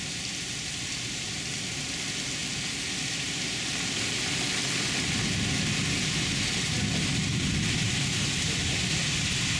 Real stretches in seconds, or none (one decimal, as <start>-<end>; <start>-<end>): 0.0-9.6